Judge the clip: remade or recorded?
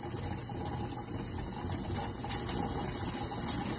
recorded